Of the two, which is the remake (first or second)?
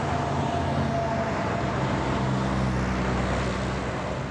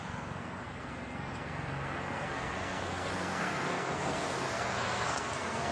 second